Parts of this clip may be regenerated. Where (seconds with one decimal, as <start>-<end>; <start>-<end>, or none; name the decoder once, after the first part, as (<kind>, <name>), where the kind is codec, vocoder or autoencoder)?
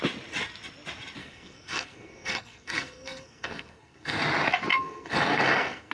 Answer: 1.2-4.2 (codec, SNAC); 4.7-5.9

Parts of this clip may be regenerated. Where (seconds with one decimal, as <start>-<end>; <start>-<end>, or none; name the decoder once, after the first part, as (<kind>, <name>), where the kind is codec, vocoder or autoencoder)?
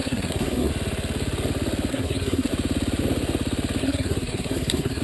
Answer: 0.0-0.7 (codec, SNAC); 1.9-2.5; 3.8-5.0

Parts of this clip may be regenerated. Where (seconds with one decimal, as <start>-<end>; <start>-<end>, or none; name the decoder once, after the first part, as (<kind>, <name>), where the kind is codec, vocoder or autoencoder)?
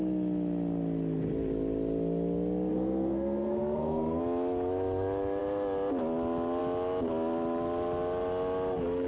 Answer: 2.7-4.2 (codec, SNAC)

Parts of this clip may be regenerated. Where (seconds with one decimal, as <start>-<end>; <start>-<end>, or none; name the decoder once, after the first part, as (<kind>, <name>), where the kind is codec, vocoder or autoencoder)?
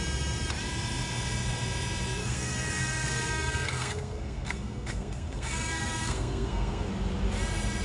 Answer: 2.2-6.9 (codec, SNAC)